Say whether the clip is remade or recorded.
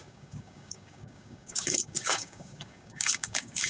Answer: remade